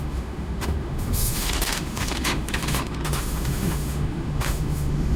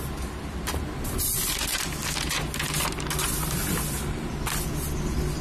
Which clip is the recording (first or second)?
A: second